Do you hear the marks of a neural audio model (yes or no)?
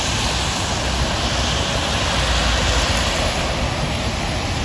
no